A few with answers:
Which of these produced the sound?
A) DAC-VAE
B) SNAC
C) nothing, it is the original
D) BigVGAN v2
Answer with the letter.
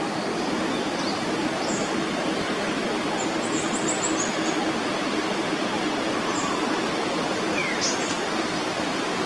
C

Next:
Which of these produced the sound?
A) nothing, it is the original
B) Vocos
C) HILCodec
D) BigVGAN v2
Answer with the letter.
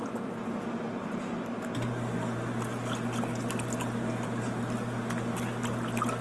A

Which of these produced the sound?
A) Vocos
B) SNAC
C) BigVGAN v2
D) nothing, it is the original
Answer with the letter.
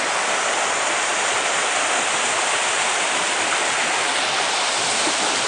D